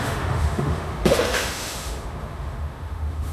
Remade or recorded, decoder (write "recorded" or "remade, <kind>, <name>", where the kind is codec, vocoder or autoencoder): remade, autoencoder, DAC-VAE